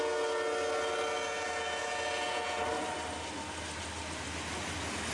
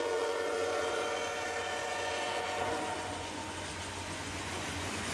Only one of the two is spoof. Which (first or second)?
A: second